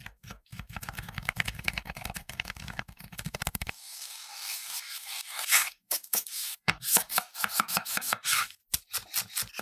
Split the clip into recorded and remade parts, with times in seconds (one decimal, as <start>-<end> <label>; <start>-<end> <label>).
0.0-8.6 remade; 8.6-9.6 recorded